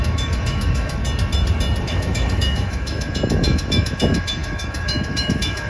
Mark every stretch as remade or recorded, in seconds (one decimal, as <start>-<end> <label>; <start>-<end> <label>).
0.0-1.0 remade; 1.0-1.8 recorded; 1.8-5.7 remade